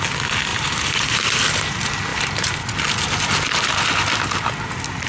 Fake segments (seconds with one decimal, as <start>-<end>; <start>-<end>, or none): 0.5-1.4; 2.1-2.6